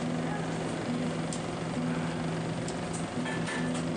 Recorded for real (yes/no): yes